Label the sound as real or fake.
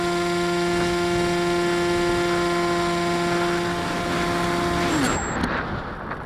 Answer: real